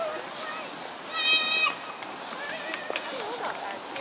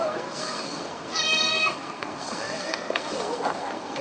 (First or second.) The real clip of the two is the first